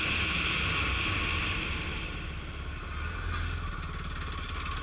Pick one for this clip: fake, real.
real